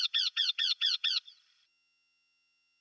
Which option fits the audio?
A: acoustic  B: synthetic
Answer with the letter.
B